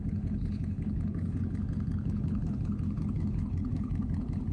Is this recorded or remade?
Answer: remade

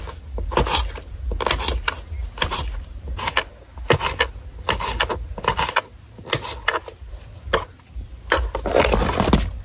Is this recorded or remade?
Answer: recorded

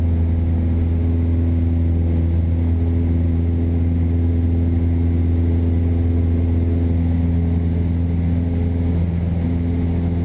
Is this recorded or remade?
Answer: recorded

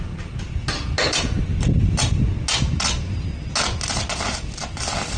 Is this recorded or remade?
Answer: recorded